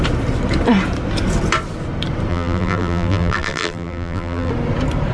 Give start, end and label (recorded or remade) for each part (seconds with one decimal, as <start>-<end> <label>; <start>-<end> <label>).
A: 0.0-2.3 recorded; 2.3-4.5 remade; 4.5-5.1 recorded